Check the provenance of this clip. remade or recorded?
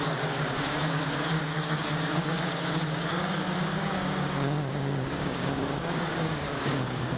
remade